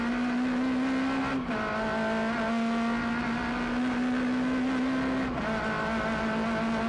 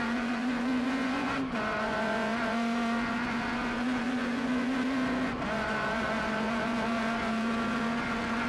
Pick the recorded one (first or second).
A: first